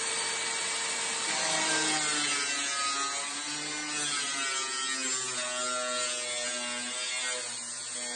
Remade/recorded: recorded